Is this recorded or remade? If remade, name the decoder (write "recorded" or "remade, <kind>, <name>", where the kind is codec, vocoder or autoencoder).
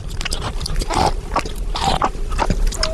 remade, vocoder, BigVGAN v2